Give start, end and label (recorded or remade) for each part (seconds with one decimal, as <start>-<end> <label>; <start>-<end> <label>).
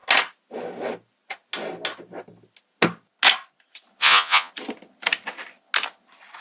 0.0-4.0 recorded; 4.0-4.5 remade; 4.5-6.4 recorded